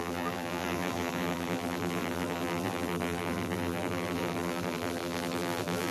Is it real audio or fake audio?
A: fake